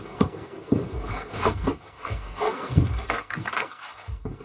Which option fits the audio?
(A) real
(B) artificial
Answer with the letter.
B